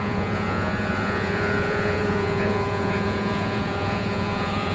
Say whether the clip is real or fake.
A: fake